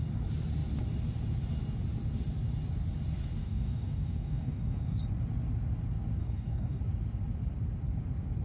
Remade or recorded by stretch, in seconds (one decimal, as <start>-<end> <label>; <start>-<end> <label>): 0.0-3.4 recorded; 3.4-5.0 remade; 5.0-6.2 recorded; 6.2-6.8 remade; 6.8-8.4 recorded